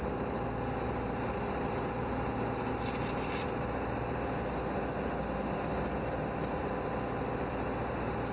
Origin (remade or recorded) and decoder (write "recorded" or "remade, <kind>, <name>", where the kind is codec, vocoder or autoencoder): recorded